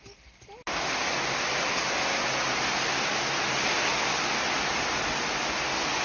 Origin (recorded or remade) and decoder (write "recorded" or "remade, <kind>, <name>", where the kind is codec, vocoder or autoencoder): recorded